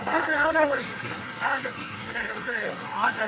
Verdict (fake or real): fake